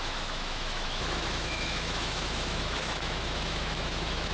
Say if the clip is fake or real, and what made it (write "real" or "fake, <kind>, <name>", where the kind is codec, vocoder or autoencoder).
fake, autoencoder, DAC-VAE